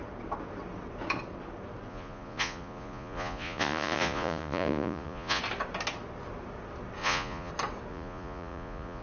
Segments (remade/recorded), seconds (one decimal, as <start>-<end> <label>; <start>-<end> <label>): 0.0-1.9 recorded; 1.9-5.4 remade; 5.4-7.0 recorded; 7.0-7.5 remade; 7.5-7.9 recorded; 7.9-9.0 remade